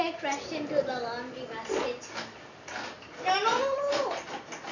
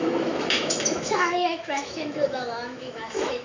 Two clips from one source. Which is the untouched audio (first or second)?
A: first